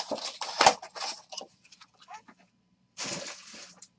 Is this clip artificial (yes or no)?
no